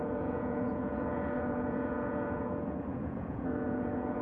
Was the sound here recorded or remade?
remade